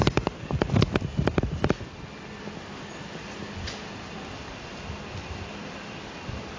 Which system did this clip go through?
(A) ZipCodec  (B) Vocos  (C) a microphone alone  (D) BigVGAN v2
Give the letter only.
C